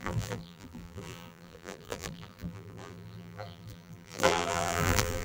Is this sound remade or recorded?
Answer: remade